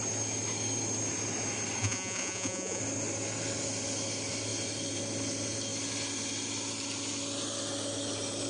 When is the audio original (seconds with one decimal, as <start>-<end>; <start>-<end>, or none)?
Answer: 0.0-1.8; 2.8-8.5